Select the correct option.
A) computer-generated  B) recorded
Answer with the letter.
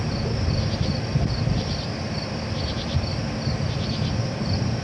B